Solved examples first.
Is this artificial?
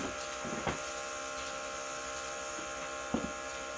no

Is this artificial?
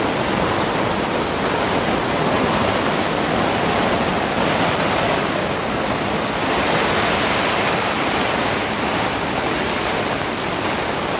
no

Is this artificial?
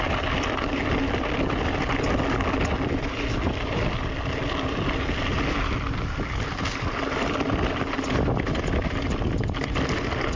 no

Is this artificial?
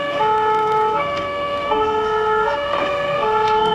yes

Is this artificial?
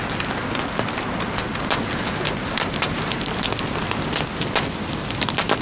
no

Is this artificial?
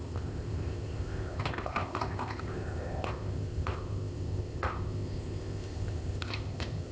yes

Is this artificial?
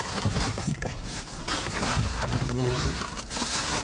yes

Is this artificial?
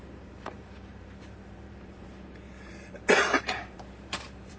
yes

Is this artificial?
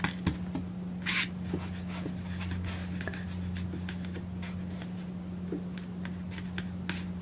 no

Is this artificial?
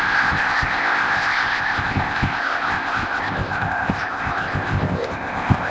yes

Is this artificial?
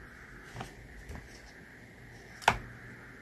no